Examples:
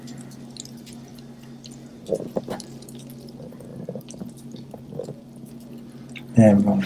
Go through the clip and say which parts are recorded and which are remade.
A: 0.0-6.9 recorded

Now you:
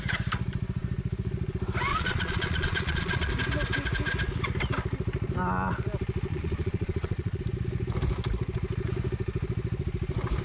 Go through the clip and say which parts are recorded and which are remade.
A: 0.0-1.9 recorded; 1.9-3.3 remade; 3.3-6.3 recorded; 6.3-7.4 remade; 7.4-10.4 recorded

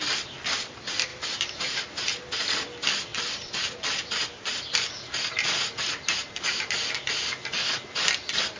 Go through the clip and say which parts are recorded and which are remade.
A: 0.0-1.1 recorded; 1.1-1.8 remade; 1.8-3.1 recorded; 3.1-7.1 remade; 7.1-8.6 recorded

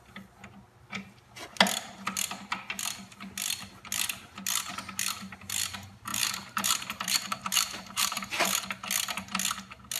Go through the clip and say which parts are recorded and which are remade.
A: 0.0-6.1 recorded; 6.1-8.6 remade; 8.6-10.0 recorded

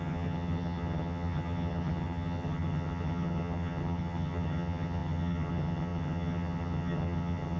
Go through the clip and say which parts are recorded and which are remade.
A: 0.0-7.6 remade